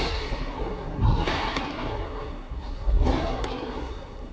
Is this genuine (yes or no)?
no